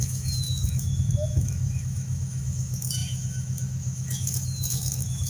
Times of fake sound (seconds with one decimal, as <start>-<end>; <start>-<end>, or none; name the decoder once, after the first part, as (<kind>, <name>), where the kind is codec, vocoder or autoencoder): 0.0-5.3 (autoencoder, DAC-VAE)